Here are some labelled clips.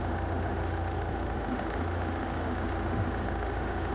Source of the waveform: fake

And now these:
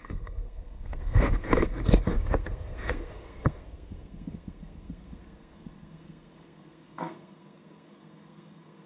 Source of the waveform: fake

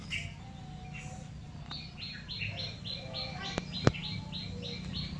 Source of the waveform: real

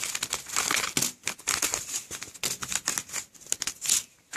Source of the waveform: real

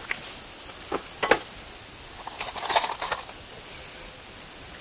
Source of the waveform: real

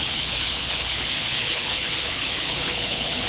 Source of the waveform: fake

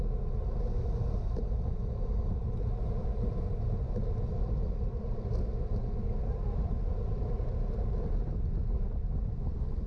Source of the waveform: real